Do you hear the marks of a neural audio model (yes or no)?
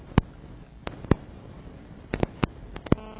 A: no